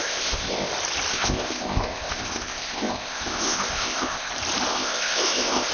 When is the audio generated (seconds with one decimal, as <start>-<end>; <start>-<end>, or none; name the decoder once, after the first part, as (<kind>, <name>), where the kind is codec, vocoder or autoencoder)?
0.0-0.7 (codec, ZipCodec); 1.1-4.3; 4.7-5.7